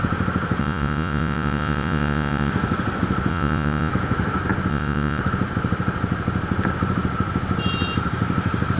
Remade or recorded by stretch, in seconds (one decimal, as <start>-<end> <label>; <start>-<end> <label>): 0.0-0.6 recorded; 0.6-2.5 remade; 2.5-3.3 recorded; 3.3-3.9 remade; 3.9-4.7 recorded; 4.7-5.2 remade; 5.2-8.8 recorded